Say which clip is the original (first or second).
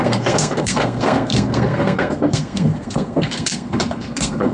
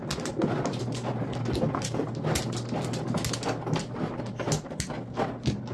second